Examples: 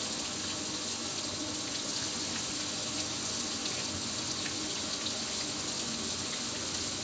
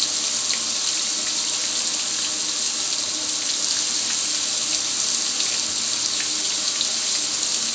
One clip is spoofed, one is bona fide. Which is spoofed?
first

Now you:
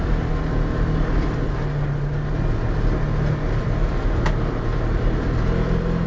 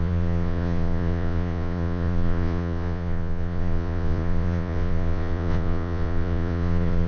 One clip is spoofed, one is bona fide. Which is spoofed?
second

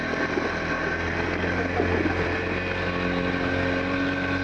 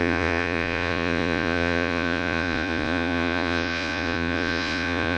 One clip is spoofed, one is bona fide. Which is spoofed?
second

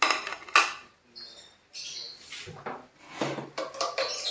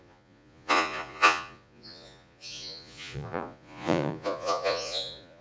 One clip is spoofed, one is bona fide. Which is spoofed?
second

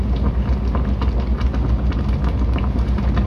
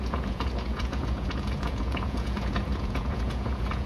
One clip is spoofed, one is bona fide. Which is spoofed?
second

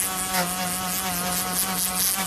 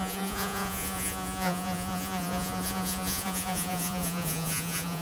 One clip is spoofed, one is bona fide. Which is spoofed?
second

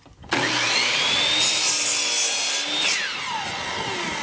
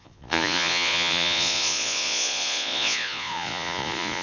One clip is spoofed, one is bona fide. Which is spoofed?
second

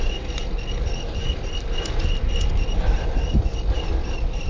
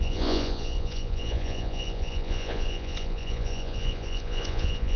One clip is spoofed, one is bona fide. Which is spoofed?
second